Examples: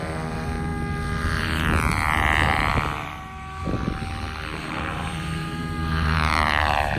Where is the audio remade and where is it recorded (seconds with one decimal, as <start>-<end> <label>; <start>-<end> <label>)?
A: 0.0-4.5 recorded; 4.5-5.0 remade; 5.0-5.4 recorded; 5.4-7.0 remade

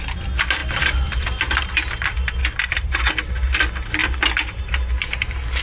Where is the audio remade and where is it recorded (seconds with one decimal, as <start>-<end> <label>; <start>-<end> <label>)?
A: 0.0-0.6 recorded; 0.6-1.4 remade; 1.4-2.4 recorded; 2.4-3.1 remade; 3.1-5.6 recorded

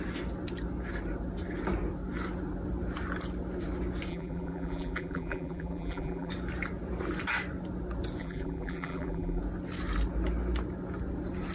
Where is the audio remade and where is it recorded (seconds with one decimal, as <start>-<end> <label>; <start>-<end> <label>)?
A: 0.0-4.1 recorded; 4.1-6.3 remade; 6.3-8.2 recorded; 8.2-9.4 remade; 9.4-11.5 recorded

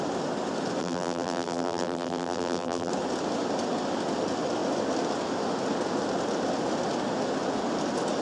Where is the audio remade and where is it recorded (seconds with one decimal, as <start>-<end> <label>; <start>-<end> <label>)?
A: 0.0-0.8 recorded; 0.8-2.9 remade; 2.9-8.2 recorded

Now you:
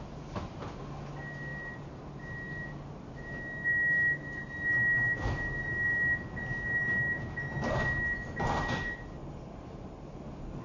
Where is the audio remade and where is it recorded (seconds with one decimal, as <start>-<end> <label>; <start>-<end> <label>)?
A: 0.0-9.2 recorded; 9.2-10.6 remade